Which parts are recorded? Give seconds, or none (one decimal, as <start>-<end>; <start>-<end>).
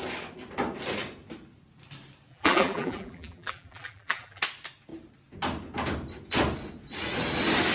0.0-2.3; 4.4-7.7